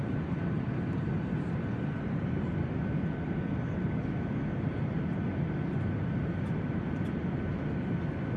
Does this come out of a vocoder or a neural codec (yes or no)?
no